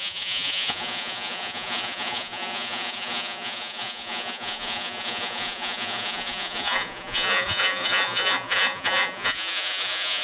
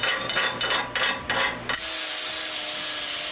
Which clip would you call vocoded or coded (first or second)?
first